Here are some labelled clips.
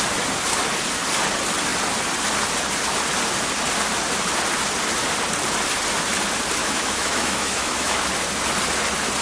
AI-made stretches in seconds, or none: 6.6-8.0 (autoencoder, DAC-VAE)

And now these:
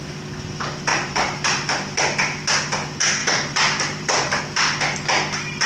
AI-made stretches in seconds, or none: 0.9-2.0 (vocoder, BigVGAN v2); 3.2-4.4

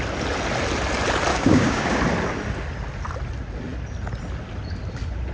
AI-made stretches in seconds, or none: 1.3-2.0 (codec, DAC)